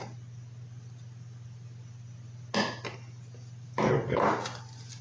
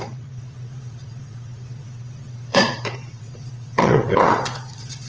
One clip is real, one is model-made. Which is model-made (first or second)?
second